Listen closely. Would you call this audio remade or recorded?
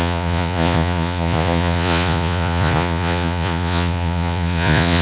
remade